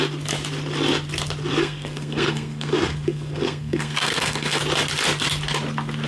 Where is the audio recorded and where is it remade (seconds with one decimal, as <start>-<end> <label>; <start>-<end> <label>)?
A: 0.0-1.6 recorded; 1.6-4.6 remade; 4.6-6.1 recorded